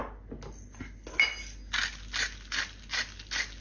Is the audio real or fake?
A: real